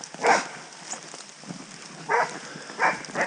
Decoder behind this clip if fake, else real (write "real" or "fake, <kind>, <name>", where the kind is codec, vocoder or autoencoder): real